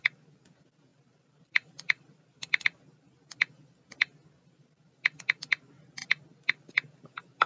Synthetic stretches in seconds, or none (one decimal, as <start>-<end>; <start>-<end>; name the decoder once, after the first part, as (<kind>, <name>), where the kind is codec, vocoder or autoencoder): 0.9-2.8 (vocoder, BigVGAN v2)